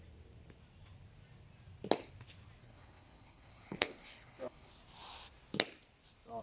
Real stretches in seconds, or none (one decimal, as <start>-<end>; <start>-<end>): 0.0-2.6; 4.7-6.4